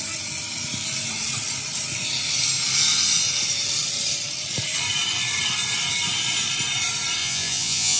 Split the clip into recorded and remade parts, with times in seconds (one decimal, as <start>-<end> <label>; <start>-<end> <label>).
0.0-7.2 recorded; 7.2-8.0 remade